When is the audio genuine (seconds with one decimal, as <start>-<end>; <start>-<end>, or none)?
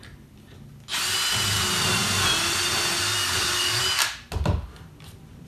0.0-3.2; 3.8-5.5